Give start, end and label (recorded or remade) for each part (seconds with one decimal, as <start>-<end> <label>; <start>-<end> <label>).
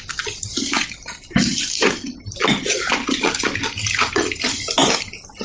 0.0-5.4 recorded